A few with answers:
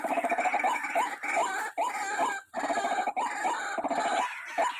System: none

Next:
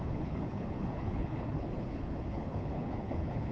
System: codec, HILCodec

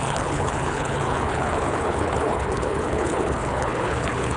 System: codec, HILCodec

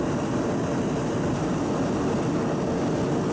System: none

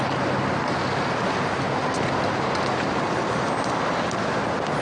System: none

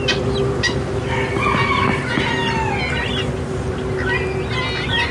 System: none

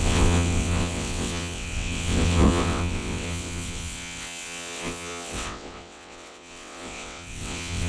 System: vocoder, WaveNeXt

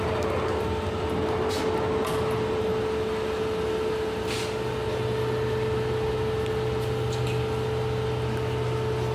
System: none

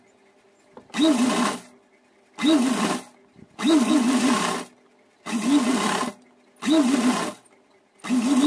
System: none